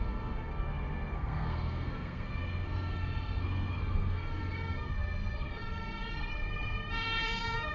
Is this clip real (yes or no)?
no